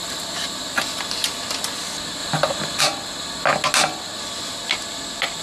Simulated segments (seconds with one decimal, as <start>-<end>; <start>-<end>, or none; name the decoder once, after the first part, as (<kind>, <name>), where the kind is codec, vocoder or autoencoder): 0.0-0.9 (vocoder, BigVGAN v2)

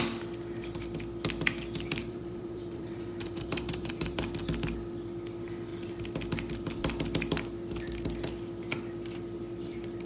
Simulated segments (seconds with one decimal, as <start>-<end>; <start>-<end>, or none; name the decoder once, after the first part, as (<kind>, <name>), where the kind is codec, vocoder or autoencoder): 2.0-4.2 (vocoder, BigVGAN v2)

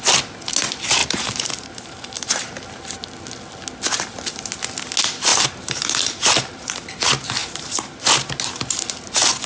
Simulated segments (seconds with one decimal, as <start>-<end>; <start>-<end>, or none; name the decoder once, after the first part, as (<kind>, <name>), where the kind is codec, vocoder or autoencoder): 1.0-2.4 (vocoder, BigVGAN v2); 5.3-6.9; 7.4-8.0

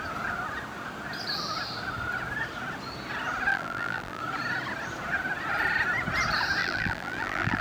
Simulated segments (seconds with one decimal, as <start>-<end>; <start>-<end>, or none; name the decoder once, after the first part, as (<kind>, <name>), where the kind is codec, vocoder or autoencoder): 3.5-4.2 (vocoder, BigVGAN v2); 6.6-7.6

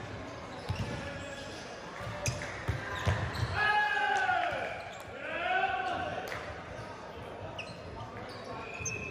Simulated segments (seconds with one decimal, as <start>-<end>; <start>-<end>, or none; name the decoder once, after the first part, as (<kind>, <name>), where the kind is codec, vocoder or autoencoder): 6.1-6.7 (vocoder, BigVGAN v2)